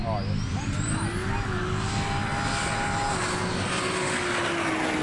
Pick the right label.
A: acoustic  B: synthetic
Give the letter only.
A